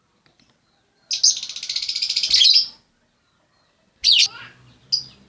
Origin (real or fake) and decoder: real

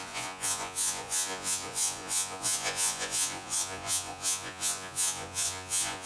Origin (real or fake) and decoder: fake, vocoder, Vocos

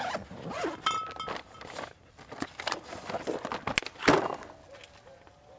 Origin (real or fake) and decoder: real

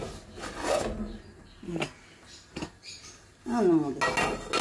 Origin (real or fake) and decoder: real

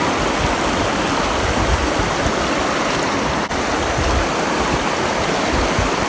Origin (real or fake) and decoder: real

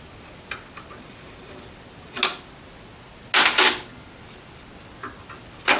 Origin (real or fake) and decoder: real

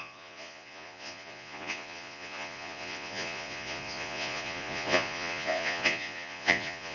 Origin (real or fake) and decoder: fake, vocoder, Vocos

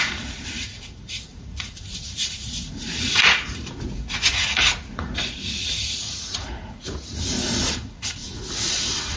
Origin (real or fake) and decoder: fake, vocoder, Vocos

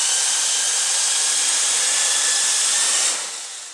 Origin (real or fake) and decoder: real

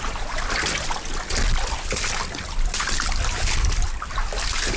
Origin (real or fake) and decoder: real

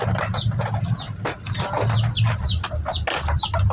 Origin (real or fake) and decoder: real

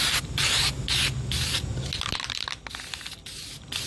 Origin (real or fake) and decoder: real